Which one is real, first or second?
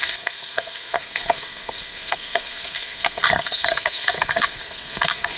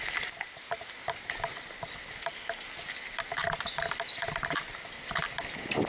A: second